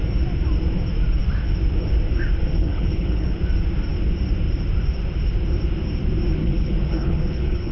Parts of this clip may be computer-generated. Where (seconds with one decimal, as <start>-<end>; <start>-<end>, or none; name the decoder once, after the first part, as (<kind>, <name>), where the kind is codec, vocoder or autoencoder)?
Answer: 2.6-3.4 (codec, HILCodec); 6.4-7.7